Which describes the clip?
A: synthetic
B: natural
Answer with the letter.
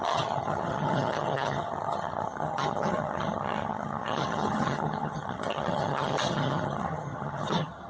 A